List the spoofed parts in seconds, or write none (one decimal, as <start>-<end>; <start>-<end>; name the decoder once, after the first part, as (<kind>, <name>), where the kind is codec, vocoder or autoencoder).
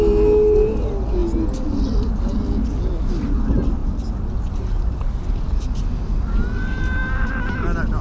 7.0-7.5 (vocoder, BigVGAN v2)